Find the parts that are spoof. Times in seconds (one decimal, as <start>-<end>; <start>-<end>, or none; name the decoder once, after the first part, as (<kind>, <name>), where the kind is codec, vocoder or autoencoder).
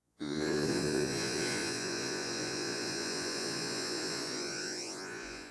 0.0-5.5 (vocoder, Vocos)